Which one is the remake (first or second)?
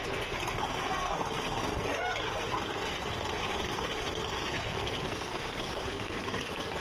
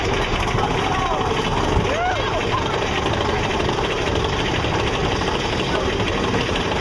first